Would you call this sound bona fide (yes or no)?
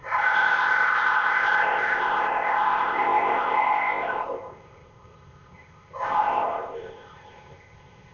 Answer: no